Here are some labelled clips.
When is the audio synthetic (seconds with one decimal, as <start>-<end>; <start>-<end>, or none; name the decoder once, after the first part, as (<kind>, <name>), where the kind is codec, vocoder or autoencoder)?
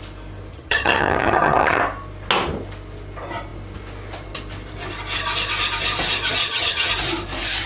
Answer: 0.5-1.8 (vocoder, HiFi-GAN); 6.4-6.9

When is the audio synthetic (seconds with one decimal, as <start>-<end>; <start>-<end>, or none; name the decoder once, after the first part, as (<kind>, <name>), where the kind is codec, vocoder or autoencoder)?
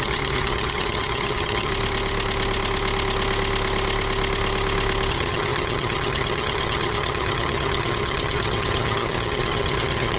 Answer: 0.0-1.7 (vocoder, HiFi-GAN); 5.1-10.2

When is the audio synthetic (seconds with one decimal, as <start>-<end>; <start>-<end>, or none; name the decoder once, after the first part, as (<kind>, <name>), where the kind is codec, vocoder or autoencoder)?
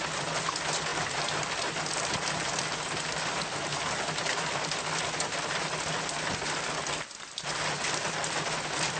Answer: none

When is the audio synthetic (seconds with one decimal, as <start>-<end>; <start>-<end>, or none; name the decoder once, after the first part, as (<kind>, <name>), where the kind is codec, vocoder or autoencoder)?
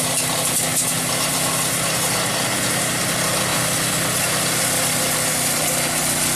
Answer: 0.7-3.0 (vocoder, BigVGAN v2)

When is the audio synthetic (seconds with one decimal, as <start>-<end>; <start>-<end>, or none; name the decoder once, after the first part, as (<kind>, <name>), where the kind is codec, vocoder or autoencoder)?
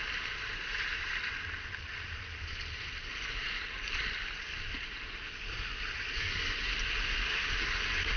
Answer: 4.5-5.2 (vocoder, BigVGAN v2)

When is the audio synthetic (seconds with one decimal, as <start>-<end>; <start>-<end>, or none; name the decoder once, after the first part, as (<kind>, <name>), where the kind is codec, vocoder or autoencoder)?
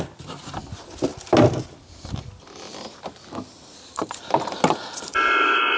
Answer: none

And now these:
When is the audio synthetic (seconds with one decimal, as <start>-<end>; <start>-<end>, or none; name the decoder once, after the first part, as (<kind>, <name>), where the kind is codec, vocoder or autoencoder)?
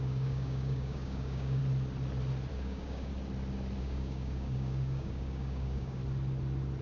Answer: 0.0-1.6 (codec, DAC); 2.5-3.1; 3.8-6.0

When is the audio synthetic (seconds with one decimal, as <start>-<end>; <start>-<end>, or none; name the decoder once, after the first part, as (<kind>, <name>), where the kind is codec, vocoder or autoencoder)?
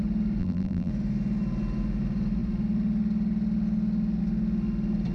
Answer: 0.4-0.9 (vocoder, BigVGAN v2)